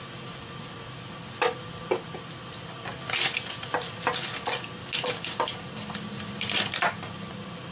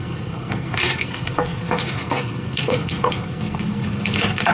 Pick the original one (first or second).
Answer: first